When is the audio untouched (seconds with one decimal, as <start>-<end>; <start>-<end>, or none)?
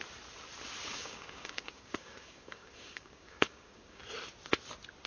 0.0-0.9; 4.0-5.1